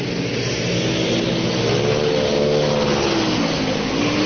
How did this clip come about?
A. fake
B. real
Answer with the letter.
B